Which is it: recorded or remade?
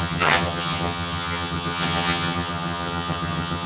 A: remade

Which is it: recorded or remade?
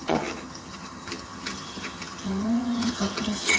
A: remade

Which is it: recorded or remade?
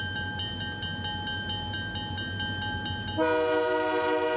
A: recorded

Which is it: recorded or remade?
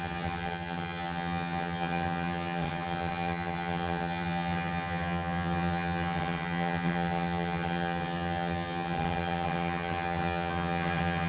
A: remade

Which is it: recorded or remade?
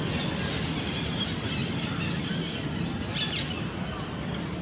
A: recorded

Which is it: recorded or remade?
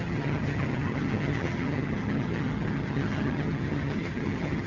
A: remade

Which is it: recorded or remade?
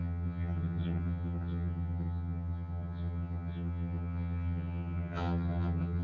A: remade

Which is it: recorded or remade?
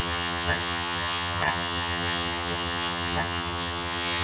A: remade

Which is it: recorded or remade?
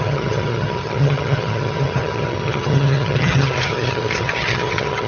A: remade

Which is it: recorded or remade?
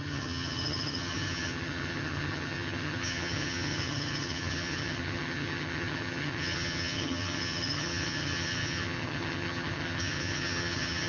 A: remade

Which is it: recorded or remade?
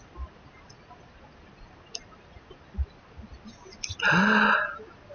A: recorded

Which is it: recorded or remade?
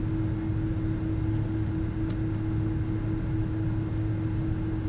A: recorded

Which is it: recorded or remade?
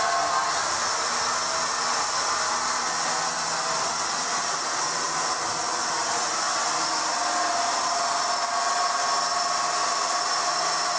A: recorded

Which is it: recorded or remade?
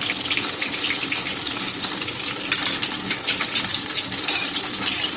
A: recorded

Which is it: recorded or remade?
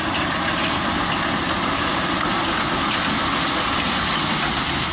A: recorded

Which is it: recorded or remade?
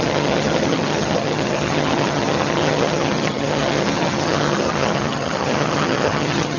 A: remade